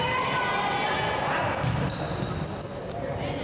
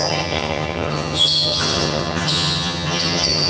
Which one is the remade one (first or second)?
second